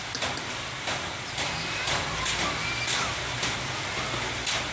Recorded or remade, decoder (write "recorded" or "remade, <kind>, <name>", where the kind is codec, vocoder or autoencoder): recorded